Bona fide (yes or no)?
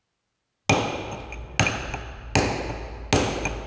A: yes